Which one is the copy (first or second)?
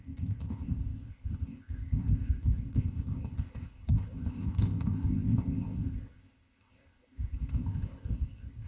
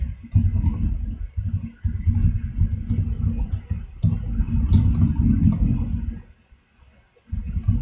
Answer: first